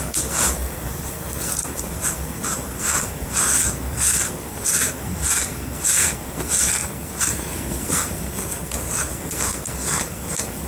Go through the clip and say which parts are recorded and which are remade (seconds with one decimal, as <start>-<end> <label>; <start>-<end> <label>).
0.0-10.7 remade

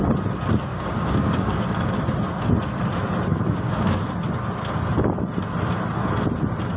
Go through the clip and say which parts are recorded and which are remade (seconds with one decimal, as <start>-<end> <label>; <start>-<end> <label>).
0.0-0.7 recorded; 0.7-1.9 remade; 1.9-3.3 recorded; 3.3-4.0 remade; 4.0-6.8 recorded

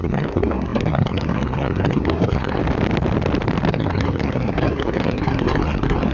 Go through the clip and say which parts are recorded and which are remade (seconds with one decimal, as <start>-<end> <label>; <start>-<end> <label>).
0.0-2.6 remade; 2.6-3.7 recorded; 3.7-6.1 remade

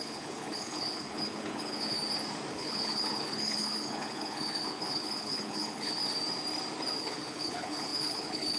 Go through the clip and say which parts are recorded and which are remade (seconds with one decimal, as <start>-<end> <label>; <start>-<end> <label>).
0.0-2.0 remade; 2.0-2.5 recorded; 2.5-6.0 remade; 6.0-7.0 recorded; 7.0-8.6 remade

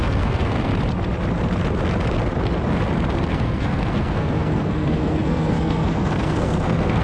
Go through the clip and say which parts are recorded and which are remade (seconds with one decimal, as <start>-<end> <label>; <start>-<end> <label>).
0.0-0.7 remade; 0.7-3.3 recorded; 3.3-7.0 remade

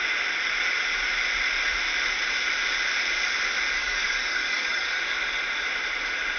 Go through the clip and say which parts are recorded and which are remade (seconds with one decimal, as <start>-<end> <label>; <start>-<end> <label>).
0.0-3.8 recorded; 3.8-5.0 remade; 5.0-6.4 recorded

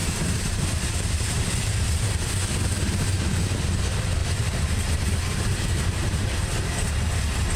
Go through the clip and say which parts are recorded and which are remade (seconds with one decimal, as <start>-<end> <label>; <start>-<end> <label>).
0.0-2.3 remade; 2.3-4.2 recorded; 4.2-6.9 remade; 6.9-7.6 recorded